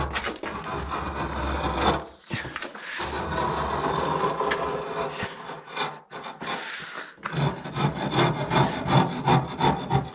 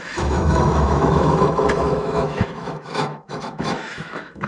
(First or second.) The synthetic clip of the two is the second